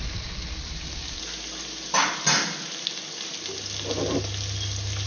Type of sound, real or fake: real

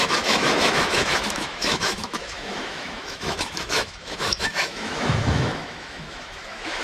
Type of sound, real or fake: fake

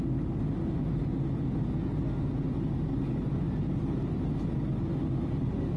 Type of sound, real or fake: real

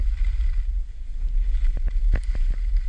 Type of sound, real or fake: real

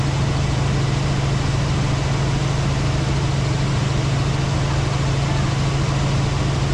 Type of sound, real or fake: real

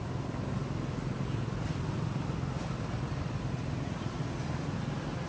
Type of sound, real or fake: real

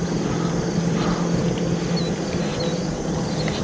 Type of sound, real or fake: real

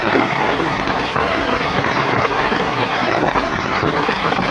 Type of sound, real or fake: fake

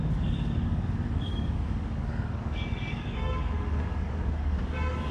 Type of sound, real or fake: fake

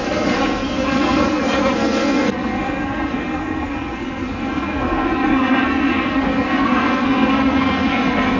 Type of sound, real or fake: fake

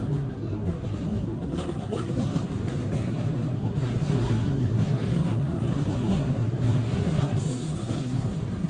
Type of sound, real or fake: fake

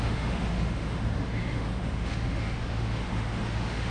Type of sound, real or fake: fake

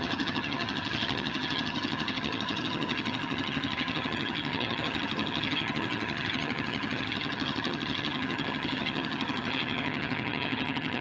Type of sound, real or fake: fake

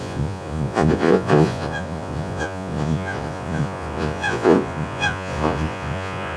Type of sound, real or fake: fake